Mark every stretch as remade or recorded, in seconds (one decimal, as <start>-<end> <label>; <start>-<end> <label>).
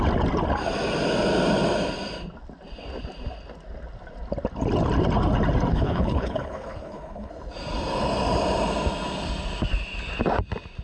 0.0-5.7 recorded; 5.7-7.3 remade; 7.3-10.8 recorded